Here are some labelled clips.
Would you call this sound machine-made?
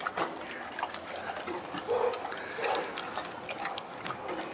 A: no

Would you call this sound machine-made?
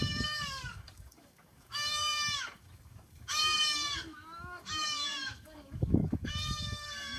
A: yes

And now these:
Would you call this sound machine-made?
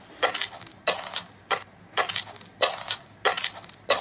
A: no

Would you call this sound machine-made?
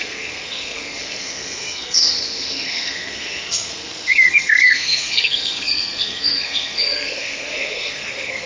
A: yes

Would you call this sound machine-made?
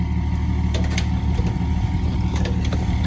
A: no